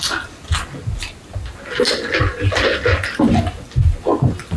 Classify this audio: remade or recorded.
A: recorded